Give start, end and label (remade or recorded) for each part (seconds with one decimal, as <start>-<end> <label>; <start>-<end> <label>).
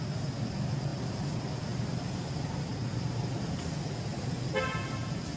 0.0-5.4 recorded